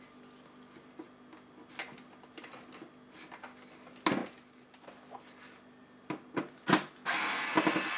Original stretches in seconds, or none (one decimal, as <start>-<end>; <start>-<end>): 0.0-8.0